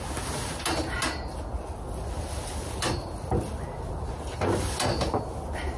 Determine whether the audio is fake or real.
real